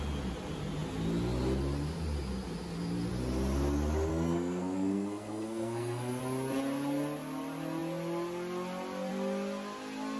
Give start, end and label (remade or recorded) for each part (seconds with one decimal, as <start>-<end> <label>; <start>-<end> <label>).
0.0-4.1 recorded; 4.1-6.2 remade; 6.2-10.2 recorded